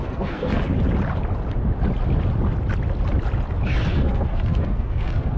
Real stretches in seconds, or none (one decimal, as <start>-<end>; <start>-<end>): 0.7-3.9